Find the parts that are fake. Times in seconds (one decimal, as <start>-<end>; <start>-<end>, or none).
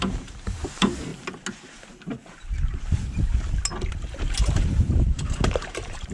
0.0-1.1; 3.9-6.1